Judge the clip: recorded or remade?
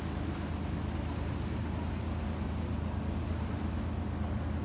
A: recorded